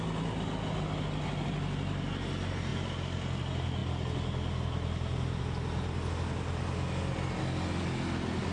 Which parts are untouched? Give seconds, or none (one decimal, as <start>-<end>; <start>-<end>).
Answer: 0.0-8.5